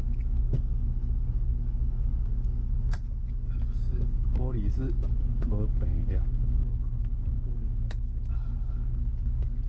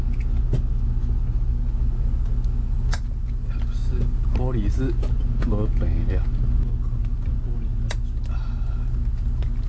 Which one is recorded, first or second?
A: second